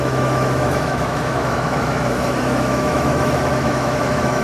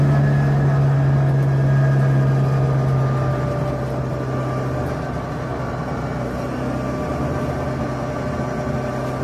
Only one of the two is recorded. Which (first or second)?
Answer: second